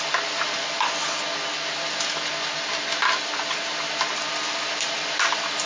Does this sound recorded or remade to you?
recorded